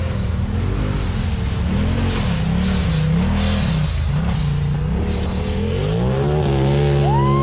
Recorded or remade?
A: recorded